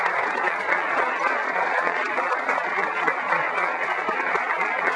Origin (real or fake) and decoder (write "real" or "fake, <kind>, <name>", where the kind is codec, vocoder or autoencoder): fake, vocoder, Vocos